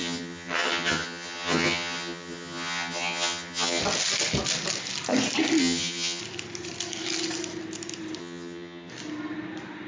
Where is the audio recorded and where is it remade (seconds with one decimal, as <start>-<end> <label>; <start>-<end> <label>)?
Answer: 0.0-3.8 remade; 3.8-5.6 recorded; 5.6-6.2 remade; 6.2-8.2 recorded; 8.2-8.9 remade; 8.9-9.9 recorded